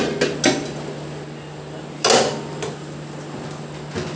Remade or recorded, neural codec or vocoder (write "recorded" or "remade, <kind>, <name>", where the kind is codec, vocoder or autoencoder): recorded